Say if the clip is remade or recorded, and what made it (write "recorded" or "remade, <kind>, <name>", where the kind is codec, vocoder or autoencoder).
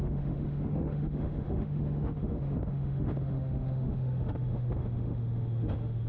remade, autoencoder, DAC-VAE